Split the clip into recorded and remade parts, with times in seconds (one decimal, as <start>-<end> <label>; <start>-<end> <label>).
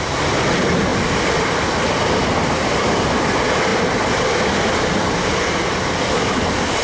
0.0-0.9 recorded; 0.9-3.0 remade; 3.0-3.7 recorded; 3.7-5.1 remade; 5.1-6.8 recorded